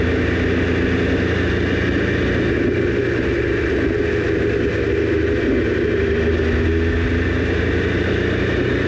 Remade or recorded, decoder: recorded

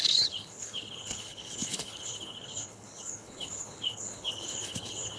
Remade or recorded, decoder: remade, codec, HILCodec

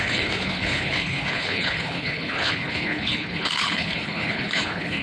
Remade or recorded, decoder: remade, codec, HILCodec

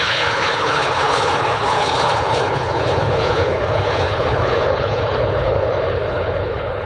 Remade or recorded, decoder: remade, codec, HILCodec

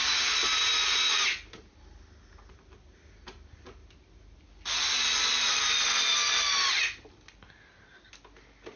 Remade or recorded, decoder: recorded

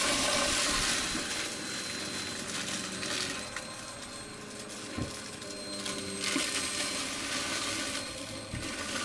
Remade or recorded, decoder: recorded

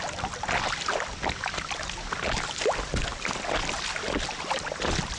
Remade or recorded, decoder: recorded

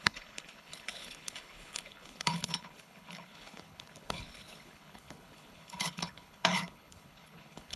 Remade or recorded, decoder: remade, codec, HILCodec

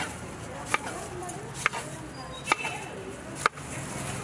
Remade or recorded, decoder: recorded